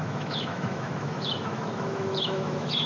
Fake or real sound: fake